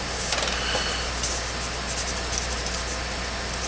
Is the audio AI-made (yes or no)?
no